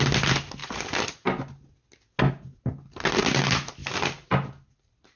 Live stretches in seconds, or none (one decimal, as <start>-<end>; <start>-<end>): 0.0-5.2